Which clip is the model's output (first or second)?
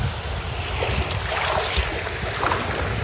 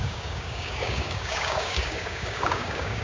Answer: second